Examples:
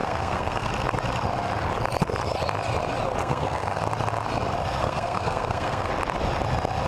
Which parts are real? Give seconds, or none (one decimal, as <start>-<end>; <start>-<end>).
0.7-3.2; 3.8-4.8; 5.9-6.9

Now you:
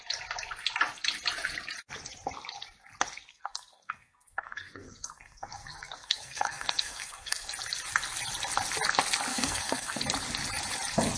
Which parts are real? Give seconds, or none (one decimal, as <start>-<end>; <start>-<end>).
0.0-3.3; 7.5-9.3; 10.0-11.2

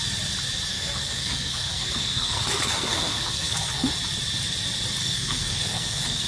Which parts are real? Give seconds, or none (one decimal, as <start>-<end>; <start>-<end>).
0.0-0.7; 3.9-5.0

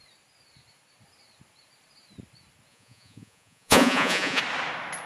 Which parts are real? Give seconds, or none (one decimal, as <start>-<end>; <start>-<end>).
0.0-2.7; 4.4-5.1